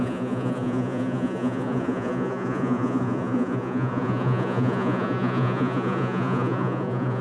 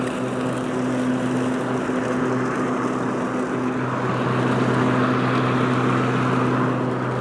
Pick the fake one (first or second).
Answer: first